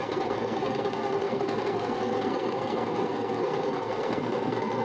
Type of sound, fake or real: fake